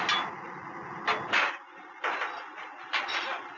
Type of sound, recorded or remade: recorded